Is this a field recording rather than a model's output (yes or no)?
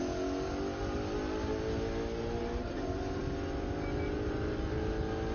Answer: yes